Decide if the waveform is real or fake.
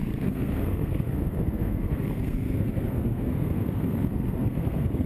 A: fake